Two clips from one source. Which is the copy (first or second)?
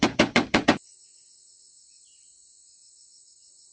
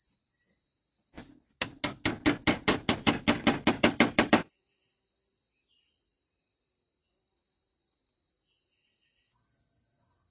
first